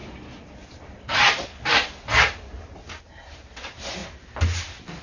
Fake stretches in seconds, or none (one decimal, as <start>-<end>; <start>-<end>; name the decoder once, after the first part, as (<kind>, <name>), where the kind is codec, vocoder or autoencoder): 0.0-4.0 (vocoder, BigVGAN v2)